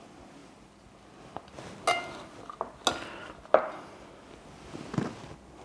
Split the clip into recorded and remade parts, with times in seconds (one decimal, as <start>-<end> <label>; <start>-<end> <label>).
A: 0.0-5.6 recorded